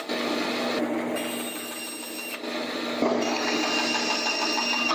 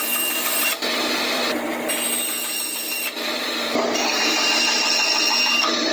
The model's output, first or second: second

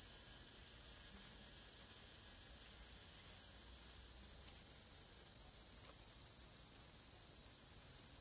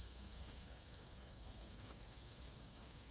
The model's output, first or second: second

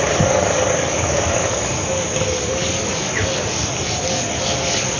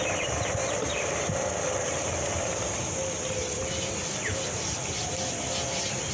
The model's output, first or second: first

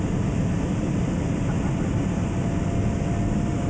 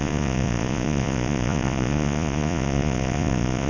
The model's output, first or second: second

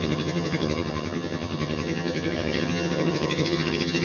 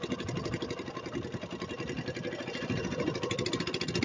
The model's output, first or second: first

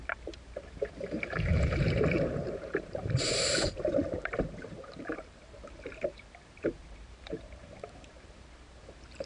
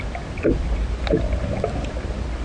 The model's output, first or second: first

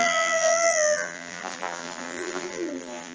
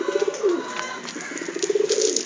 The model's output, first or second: first